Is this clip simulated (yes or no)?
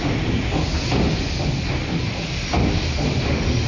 no